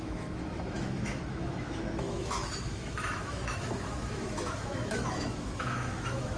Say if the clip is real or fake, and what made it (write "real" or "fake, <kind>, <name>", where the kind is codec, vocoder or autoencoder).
fake, autoencoder, DAC-VAE